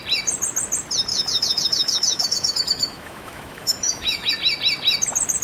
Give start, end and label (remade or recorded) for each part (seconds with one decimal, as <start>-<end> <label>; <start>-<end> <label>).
0.0-1.1 recorded; 1.1-4.3 remade; 4.3-5.4 recorded